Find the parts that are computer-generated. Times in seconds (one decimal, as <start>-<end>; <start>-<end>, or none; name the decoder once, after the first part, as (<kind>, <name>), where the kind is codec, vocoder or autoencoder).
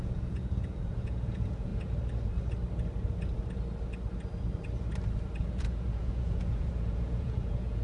0.0-1.7 (vocoder, Vocos); 5.4-7.8